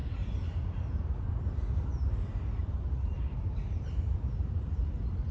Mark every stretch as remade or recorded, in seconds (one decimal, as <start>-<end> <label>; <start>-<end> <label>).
0.0-5.3 recorded